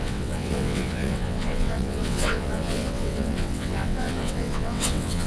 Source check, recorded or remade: remade